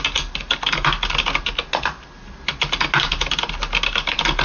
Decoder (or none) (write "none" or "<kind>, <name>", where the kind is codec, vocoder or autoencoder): none